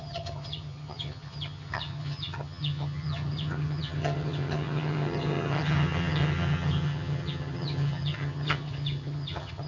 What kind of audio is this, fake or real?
fake